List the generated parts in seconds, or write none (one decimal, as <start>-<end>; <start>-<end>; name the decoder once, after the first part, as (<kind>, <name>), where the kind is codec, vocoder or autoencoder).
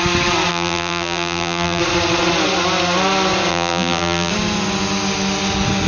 0.5-1.8 (vocoder, BigVGAN v2); 3.5-4.3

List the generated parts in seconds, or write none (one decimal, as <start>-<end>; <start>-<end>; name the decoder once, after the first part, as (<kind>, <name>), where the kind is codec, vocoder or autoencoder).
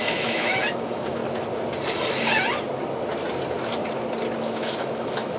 0.0-1.2 (autoencoder, DAC-VAE); 4.4-5.4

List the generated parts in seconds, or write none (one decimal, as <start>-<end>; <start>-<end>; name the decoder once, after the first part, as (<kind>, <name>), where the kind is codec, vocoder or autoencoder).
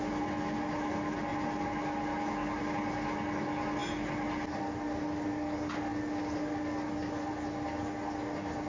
none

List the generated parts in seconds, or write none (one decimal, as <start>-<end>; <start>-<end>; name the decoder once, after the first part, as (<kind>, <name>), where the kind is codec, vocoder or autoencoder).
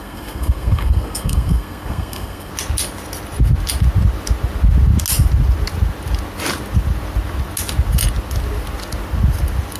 0.0-2.5 (codec, SNAC)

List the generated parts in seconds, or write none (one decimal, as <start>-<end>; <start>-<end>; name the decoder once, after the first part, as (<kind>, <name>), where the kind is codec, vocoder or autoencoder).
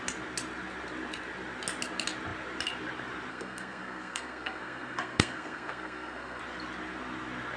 3.3-6.4 (codec, SNAC)